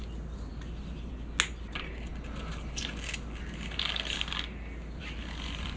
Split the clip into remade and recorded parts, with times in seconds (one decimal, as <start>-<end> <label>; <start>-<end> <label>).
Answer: 0.0-5.8 recorded